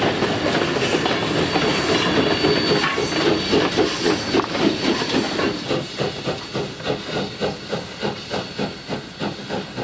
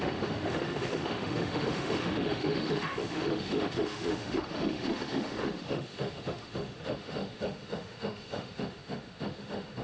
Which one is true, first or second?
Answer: first